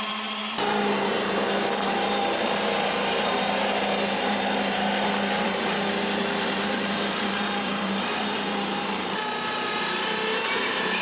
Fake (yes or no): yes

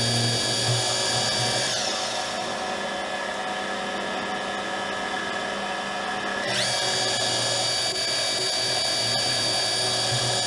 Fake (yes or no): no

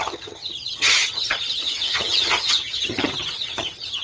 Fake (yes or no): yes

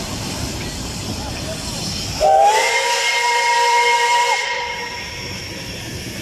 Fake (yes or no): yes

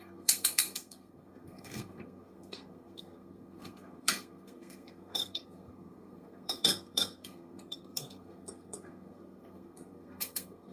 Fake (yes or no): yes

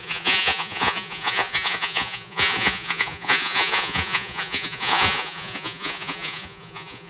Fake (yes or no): yes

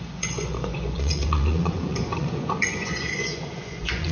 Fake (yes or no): yes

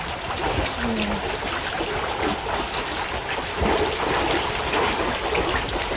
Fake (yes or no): no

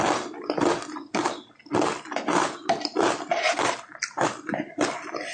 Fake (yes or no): no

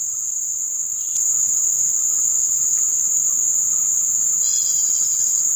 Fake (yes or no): no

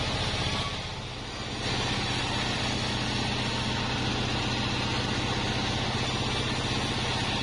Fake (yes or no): no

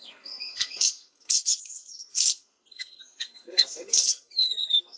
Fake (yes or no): yes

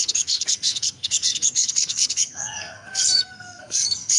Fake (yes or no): yes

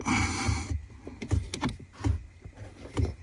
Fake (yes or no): no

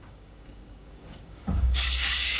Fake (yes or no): yes